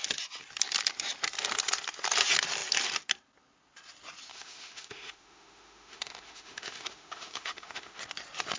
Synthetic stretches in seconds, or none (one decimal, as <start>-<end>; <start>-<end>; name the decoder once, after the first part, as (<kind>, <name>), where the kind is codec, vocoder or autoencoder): 4.3-8.0 (autoencoder, DAC-VAE)